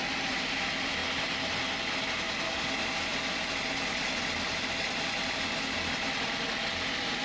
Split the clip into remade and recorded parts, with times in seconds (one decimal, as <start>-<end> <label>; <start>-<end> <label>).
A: 0.0-7.2 recorded